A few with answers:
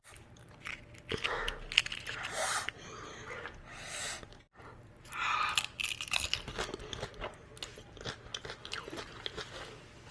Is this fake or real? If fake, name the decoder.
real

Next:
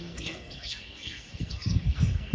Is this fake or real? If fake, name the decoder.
fake, codec, SNAC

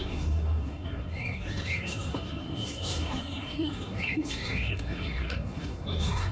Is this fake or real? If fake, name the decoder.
fake, codec, SNAC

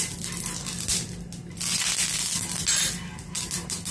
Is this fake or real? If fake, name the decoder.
real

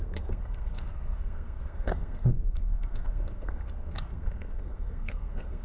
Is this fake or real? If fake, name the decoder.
fake, codec, SNAC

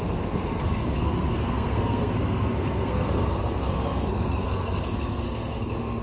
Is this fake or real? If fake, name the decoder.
fake, codec, SNAC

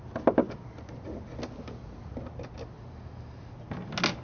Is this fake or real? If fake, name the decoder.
real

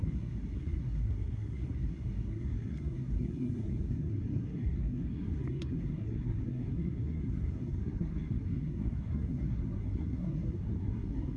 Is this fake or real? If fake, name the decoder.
fake, codec, SNAC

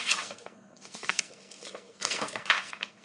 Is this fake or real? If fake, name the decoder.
fake, codec, SNAC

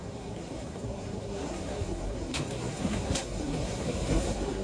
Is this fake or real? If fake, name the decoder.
fake, codec, SNAC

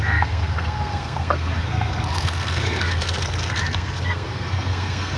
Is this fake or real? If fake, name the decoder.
fake, codec, SNAC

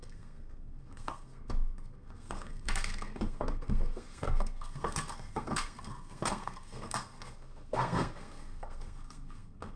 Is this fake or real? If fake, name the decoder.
fake, codec, SNAC